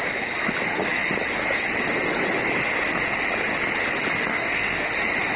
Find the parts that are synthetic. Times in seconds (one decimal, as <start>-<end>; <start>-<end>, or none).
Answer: 4.3-4.9